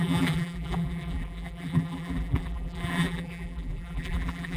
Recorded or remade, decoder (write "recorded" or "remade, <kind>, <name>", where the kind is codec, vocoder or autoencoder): remade, vocoder, BigVGAN v2